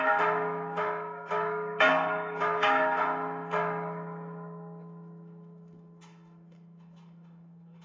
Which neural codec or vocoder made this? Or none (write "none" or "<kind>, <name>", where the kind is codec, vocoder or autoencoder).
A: autoencoder, DAC-VAE